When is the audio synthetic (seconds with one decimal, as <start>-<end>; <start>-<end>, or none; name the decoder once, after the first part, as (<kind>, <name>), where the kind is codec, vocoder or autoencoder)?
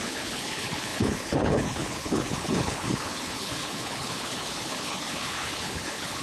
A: 0.0-6.2 (codec, HILCodec)